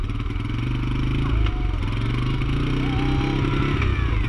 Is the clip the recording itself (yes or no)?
yes